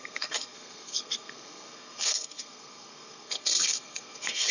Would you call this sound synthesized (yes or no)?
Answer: yes